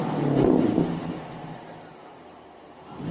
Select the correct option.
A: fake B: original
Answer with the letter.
B